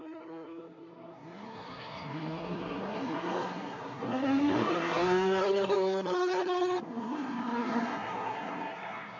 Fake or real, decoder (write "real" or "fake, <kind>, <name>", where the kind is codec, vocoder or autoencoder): fake, codec, SNAC